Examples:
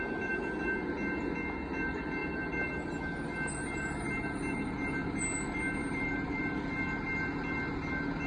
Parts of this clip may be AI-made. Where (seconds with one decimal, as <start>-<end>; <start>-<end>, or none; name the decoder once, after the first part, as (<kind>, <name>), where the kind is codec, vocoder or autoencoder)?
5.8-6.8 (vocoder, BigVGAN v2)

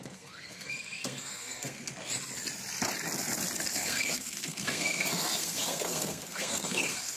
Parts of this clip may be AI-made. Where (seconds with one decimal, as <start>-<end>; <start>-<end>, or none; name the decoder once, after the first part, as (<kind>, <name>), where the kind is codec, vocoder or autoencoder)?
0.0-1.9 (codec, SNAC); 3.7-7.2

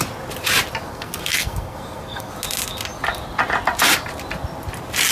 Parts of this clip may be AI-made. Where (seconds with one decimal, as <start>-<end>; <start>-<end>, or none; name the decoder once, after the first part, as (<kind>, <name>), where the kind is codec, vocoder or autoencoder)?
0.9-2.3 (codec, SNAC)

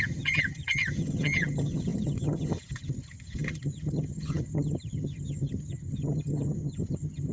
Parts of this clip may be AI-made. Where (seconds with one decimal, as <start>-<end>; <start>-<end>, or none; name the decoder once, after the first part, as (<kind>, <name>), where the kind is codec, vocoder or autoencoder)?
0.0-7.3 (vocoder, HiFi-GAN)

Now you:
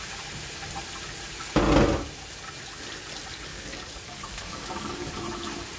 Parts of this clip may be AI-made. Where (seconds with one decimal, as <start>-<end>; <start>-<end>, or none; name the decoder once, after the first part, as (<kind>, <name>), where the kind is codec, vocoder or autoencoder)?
3.5-5.1 (codec, DAC)

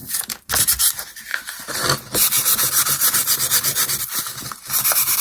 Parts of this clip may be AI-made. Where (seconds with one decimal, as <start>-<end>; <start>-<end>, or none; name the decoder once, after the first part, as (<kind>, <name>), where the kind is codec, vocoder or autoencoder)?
none

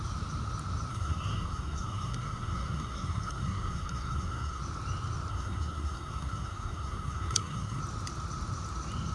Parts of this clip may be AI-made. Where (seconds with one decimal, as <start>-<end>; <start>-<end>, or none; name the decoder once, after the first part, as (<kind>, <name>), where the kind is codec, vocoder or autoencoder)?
0.9-4.6 (codec, SNAC); 5.3-7.8

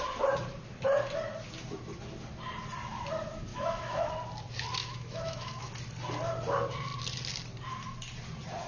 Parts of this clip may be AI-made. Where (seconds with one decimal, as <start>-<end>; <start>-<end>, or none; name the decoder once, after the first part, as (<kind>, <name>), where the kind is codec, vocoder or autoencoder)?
3.5-4.1 (autoencoder, DAC-VAE); 4.8-5.7